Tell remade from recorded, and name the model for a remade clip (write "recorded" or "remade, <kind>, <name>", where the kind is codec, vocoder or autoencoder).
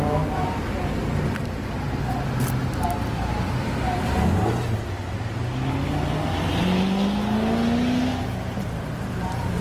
recorded